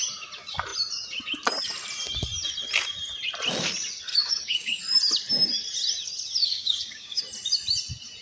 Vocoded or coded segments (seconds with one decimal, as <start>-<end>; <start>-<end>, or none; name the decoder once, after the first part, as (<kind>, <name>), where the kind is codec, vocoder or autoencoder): 4.1-4.8 (codec, DAC); 6.4-7.2